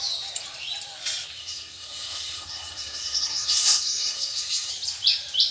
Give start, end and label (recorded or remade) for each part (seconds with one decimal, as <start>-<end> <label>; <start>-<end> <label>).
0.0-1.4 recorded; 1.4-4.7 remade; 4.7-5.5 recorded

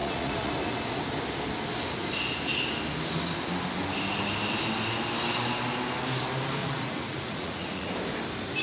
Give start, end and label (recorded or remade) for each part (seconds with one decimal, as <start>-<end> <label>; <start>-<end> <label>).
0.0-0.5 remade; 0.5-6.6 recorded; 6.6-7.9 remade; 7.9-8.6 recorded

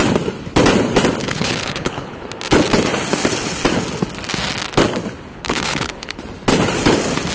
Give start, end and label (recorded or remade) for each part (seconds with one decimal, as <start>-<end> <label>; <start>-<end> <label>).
0.0-1.2 recorded; 1.2-2.2 remade; 2.2-5.3 recorded; 5.3-6.2 remade; 6.2-7.3 recorded

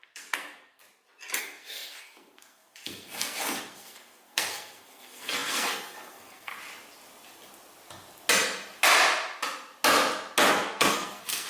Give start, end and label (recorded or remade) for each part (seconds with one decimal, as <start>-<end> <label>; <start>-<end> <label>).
0.0-0.8 remade; 0.8-1.4 recorded; 1.4-6.5 remade; 6.5-10.5 recorded; 10.5-11.5 remade

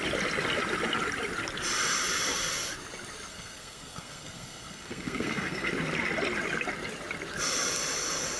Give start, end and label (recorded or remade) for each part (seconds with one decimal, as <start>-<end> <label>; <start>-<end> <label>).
0.0-3.3 recorded; 3.3-5.7 remade; 5.7-8.4 recorded

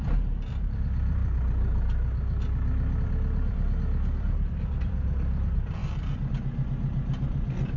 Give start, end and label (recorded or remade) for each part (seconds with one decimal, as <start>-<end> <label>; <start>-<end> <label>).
0.0-1.2 remade; 1.2-3.0 recorded; 3.0-7.8 remade